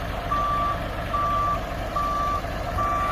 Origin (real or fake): real